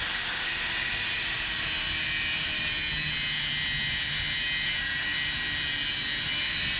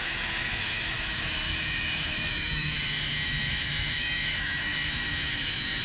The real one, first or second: first